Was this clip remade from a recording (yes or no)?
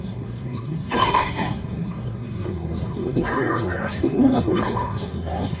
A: yes